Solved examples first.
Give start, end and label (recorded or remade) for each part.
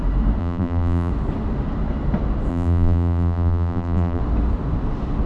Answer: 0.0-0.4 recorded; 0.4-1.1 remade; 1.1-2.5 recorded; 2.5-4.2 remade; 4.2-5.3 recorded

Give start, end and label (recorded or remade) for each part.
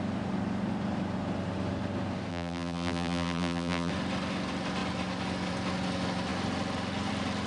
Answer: 0.0-2.3 recorded; 2.3-3.9 remade; 3.9-7.5 recorded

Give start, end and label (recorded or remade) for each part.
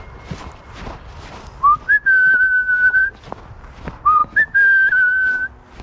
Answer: 0.0-2.7 recorded; 2.7-3.3 remade; 3.3-5.8 recorded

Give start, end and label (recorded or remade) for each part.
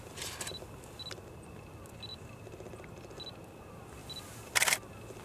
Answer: 0.0-5.2 recorded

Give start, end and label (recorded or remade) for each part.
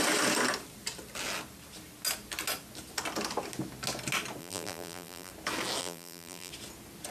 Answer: 0.0-4.4 recorded; 4.4-5.3 remade; 5.3-5.8 recorded; 5.8-6.5 remade; 6.5-7.1 recorded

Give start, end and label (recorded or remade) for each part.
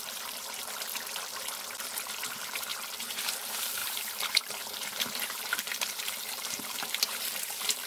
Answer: 0.0-0.9 remade; 0.9-2.3 recorded; 2.3-2.7 remade; 2.7-3.2 recorded; 3.2-7.9 remade